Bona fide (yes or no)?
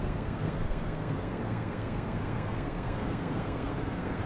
no